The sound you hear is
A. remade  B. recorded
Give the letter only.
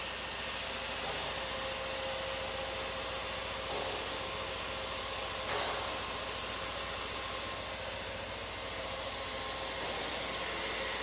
B